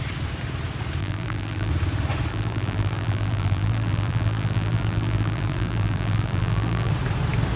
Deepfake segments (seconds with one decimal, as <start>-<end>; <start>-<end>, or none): 1.0-1.7; 2.3-6.9